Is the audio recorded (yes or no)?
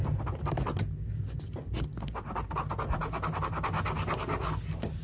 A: yes